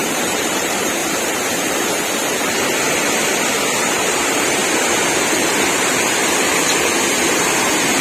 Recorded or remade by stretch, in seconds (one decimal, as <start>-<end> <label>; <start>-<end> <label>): 0.0-1.0 remade; 1.0-3.9 recorded; 3.9-4.6 remade; 4.6-8.0 recorded